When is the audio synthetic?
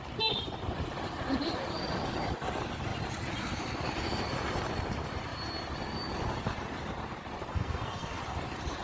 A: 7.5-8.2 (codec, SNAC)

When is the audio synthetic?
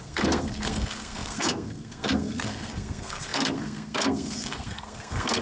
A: 0.0-5.4 (codec, SNAC)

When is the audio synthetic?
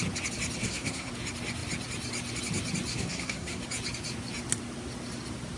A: 0.6-1.1 (codec, SNAC); 2.9-3.6